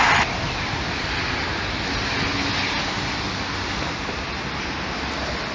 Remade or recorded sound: recorded